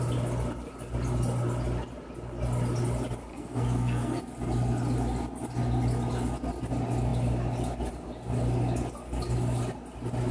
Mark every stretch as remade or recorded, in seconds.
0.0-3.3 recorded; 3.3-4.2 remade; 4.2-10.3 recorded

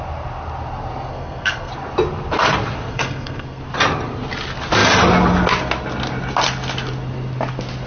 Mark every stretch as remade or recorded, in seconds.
0.0-1.1 recorded; 1.1-1.7 remade; 1.7-2.9 recorded; 2.9-3.6 remade; 3.6-7.9 recorded

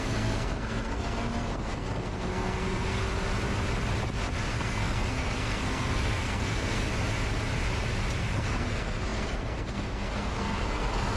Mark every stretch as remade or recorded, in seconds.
0.0-3.0 remade; 3.0-4.5 recorded; 4.5-6.9 remade; 6.9-8.2 recorded; 8.2-11.2 remade

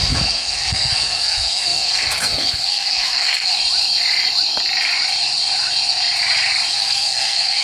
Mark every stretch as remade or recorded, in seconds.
0.0-3.5 remade; 3.5-6.7 recorded; 6.7-7.6 remade